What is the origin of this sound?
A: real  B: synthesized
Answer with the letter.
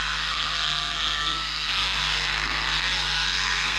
B